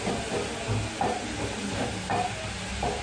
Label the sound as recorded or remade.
recorded